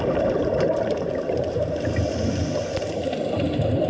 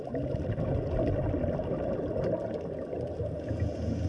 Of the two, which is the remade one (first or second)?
first